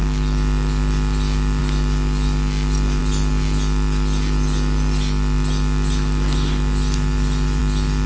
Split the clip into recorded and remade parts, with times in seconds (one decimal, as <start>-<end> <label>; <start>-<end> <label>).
0.0-8.1 recorded